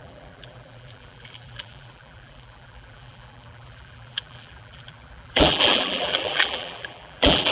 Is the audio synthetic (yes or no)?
yes